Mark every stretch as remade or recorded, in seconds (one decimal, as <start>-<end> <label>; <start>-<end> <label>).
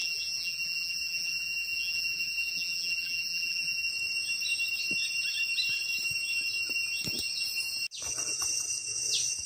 0.0-3.9 remade; 3.9-9.5 recorded